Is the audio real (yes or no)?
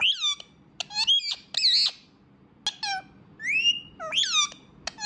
yes